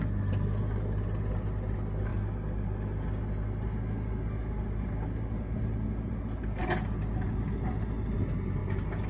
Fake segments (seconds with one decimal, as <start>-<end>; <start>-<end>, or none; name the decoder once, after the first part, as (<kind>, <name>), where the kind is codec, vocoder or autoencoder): none